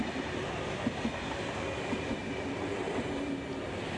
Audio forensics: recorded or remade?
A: recorded